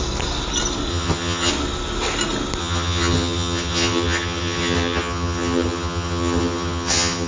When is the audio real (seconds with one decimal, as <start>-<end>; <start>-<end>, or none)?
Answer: 0.0-0.9; 1.5-2.6